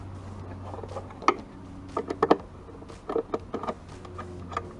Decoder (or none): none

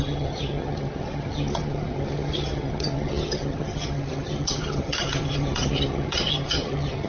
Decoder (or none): vocoder, HiFi-GAN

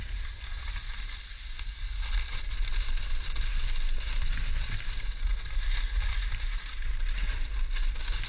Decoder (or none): none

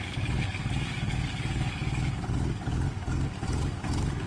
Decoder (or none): codec, DAC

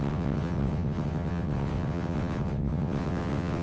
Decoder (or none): vocoder, WaveNeXt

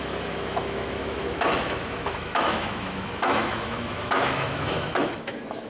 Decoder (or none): autoencoder, DAC-VAE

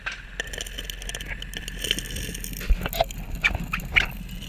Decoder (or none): none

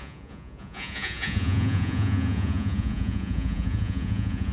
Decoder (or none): vocoder, Vocos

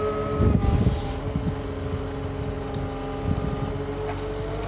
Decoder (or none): none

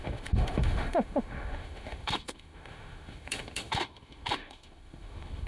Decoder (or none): autoencoder, DAC-VAE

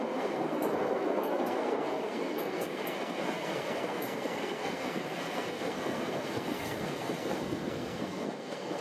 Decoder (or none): codec, SNAC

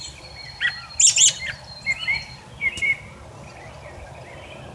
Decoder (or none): none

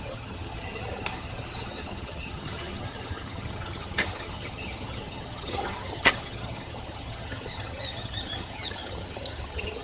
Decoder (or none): vocoder, HiFi-GAN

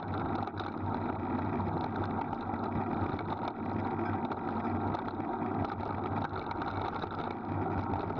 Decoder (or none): none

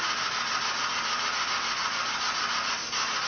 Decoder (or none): none